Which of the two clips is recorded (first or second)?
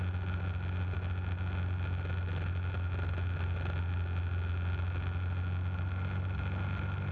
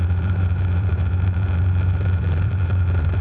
first